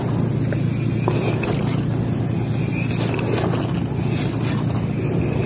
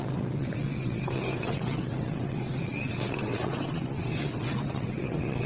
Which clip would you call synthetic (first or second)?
second